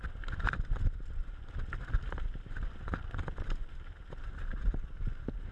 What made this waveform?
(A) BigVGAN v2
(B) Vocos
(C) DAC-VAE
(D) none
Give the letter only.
D